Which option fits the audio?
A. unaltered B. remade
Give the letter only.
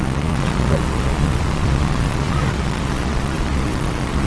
B